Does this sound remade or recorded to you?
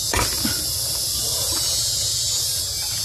recorded